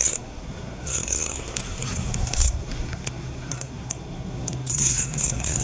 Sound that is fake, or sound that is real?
fake